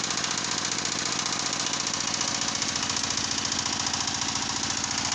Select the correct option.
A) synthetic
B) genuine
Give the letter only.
B